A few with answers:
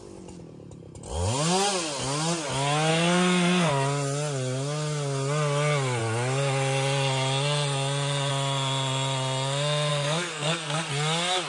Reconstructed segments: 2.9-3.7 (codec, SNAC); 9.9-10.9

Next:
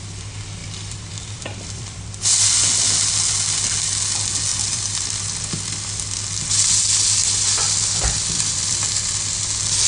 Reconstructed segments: 0.6-2.1 (vocoder, BigVGAN v2); 4.5-6.0; 7.2-9.4

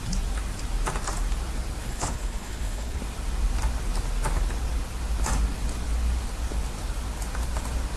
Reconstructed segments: 1.8-3.0 (codec, HILCodec)

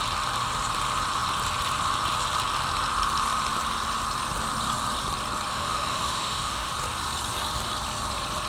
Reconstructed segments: 5.5-6.7 (autoencoder, DAC-VAE)

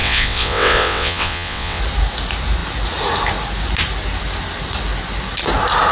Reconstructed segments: 0.0-1.8 (vocoder, WaveNeXt)

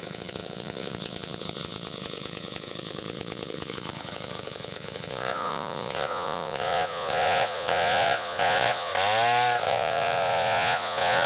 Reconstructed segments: 0.0-8.9 (vocoder, Vocos); 9.6-11.3

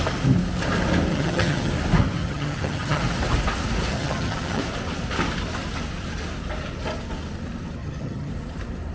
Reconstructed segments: 1.1-1.7 (vocoder, HiFi-GAN); 2.2-3.0; 3.9-4.6; 7.8-8.3